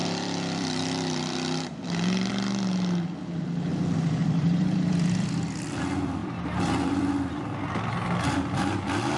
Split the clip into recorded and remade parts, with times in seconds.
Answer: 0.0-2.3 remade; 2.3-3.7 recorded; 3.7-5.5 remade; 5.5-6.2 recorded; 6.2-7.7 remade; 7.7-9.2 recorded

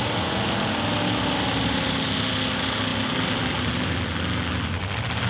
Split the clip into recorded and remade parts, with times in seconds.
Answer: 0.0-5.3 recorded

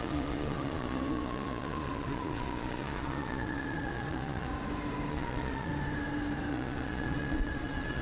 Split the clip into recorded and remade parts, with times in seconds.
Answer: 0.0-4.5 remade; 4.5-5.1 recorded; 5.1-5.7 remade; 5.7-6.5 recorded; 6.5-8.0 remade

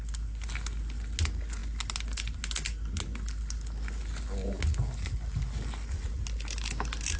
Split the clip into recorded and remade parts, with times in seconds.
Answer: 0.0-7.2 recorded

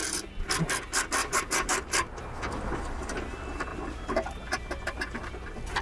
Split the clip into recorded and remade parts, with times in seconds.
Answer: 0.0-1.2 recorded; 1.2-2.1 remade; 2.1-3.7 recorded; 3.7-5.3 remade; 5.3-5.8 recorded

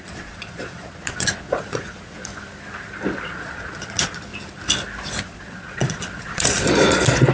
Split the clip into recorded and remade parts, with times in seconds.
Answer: 0.0-2.3 remade; 2.3-3.2 recorded; 3.2-4.3 remade; 4.3-5.2 recorded; 5.2-7.3 remade